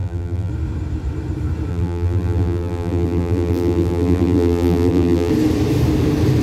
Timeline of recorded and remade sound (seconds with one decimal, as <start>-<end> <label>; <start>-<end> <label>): 0.0-0.5 remade; 0.5-1.7 recorded; 1.7-5.3 remade; 5.3-6.4 recorded

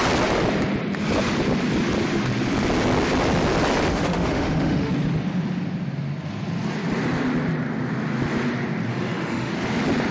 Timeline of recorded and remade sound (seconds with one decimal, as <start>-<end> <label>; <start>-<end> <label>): 0.0-3.9 recorded; 3.9-4.9 remade; 4.9-8.9 recorded; 8.9-9.5 remade; 9.5-10.1 recorded

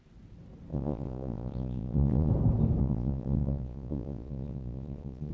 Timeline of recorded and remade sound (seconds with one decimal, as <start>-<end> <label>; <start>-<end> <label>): 0.0-0.7 recorded; 0.7-2.3 remade; 2.3-2.8 recorded; 2.8-5.3 remade

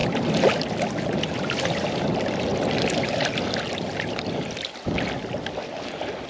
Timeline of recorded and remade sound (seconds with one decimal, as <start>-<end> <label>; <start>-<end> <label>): 0.0-6.3 recorded

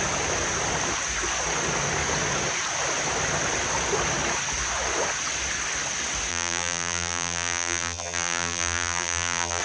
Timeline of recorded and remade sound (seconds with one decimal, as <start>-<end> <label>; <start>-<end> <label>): 0.0-6.3 recorded; 6.3-9.6 remade